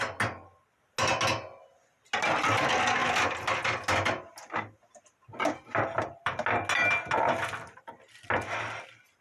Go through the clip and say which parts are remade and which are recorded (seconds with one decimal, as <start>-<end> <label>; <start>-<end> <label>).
0.0-9.2 recorded